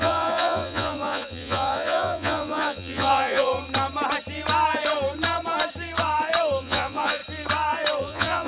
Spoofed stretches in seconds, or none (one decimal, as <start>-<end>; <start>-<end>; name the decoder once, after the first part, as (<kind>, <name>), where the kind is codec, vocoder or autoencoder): 0.0-3.5 (vocoder, Vocos); 6.6-7.2; 8.0-8.5